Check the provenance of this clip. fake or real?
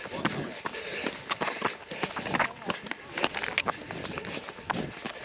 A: real